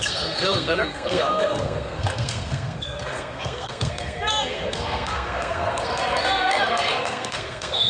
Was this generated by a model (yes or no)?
yes